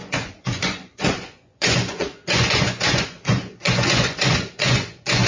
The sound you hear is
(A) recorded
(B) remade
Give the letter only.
B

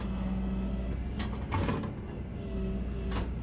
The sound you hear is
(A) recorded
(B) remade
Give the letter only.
A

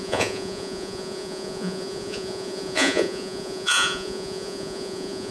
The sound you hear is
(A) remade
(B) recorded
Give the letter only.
A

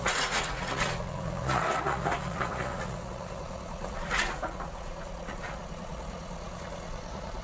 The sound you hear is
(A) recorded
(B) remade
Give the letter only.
B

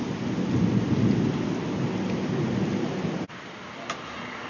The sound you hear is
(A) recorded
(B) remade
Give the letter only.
A